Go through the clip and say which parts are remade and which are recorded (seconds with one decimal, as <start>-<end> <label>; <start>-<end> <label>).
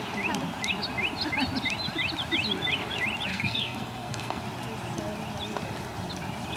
0.0-3.3 recorded; 3.3-4.4 remade; 4.4-6.6 recorded